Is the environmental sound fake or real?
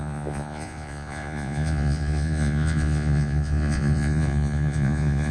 fake